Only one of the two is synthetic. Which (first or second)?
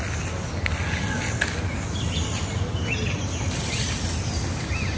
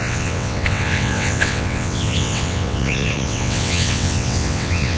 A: second